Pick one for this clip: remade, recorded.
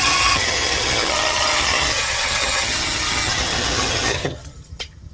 remade